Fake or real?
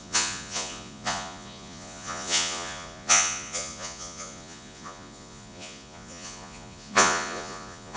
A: fake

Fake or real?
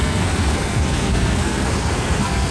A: fake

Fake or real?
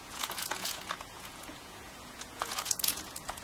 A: fake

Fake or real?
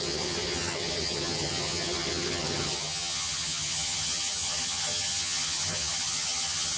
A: fake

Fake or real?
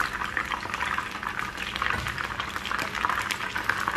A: real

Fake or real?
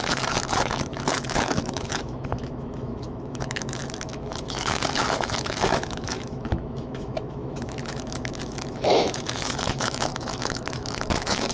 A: fake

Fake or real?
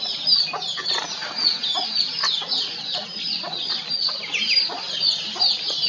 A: real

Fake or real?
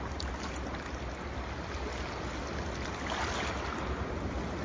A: real